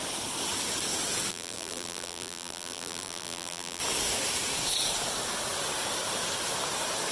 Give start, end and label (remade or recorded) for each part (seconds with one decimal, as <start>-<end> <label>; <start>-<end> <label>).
0.0-1.3 recorded; 1.3-3.8 remade; 3.8-7.1 recorded